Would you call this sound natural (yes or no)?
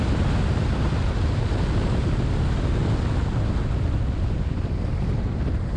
yes